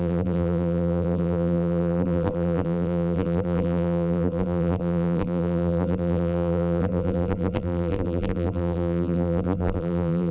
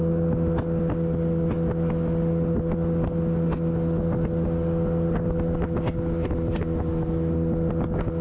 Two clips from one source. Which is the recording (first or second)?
second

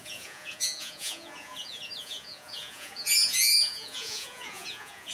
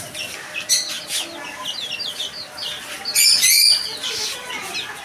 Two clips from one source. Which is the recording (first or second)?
second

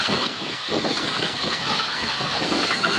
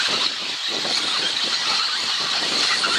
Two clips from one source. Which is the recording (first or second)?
second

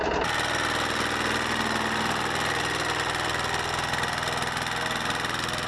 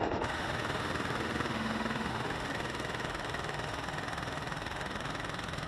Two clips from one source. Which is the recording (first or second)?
first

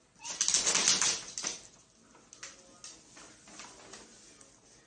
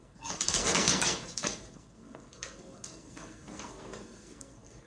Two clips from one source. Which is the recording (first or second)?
first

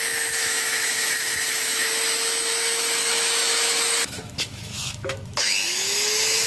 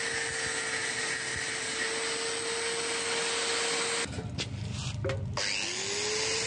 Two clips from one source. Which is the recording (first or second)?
second